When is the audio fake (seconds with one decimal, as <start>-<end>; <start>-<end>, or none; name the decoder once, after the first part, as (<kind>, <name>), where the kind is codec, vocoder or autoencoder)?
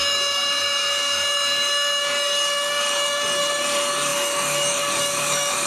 0.0-5.7 (codec, DAC)